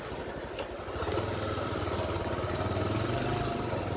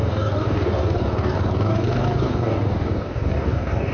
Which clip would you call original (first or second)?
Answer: first